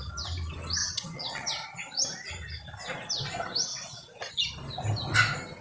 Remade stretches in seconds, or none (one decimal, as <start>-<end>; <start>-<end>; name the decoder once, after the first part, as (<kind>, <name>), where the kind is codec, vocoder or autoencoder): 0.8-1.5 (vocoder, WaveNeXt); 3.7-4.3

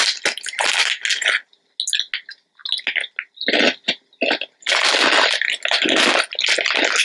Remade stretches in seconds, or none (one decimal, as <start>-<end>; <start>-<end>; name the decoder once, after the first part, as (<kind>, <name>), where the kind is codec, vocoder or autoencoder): none

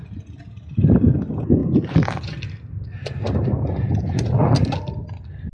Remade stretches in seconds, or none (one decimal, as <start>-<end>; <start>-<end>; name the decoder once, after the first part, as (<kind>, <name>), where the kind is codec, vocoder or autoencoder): none